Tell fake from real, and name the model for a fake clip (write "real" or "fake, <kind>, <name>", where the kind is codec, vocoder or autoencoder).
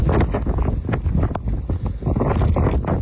real